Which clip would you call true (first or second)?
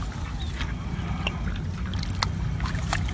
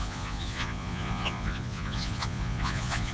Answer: first